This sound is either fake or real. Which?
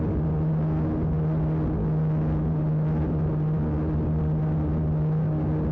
real